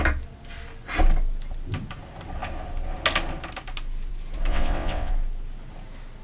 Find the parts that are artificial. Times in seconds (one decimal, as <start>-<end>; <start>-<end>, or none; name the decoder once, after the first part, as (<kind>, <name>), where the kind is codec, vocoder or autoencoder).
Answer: 4.5-5.1 (vocoder, WaveNeXt)